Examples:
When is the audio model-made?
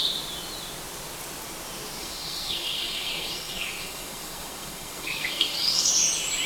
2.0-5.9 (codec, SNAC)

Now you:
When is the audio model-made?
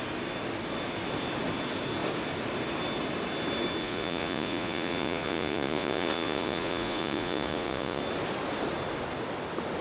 3.8-8.0 (vocoder, Vocos)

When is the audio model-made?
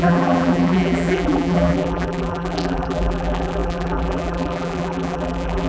0.0-5.7 (vocoder, BigVGAN v2)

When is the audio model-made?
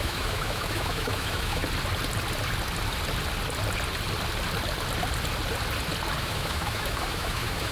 0.0-1.6 (autoencoder, DAC-VAE); 6.2-7.7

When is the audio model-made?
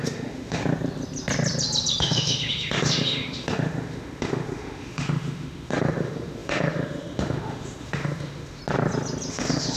0.0-0.6 (autoencoder, DAC-VAE); 2.0-8.6; 9.3-9.8